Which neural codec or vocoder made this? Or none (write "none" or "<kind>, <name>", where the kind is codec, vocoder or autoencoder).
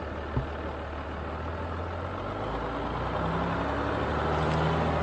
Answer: none